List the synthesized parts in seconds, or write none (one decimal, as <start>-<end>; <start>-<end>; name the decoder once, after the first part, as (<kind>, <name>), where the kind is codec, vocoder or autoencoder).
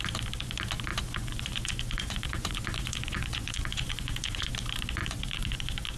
0.9-4.5 (vocoder, Vocos); 5.0-6.0